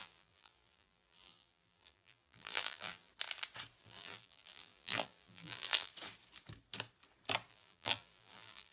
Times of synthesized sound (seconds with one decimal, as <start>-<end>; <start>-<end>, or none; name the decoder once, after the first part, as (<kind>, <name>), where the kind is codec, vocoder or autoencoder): 0.0-3.1 (vocoder, BigVGAN v2); 3.8-5.9; 7.5-8.7